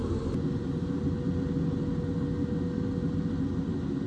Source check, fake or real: real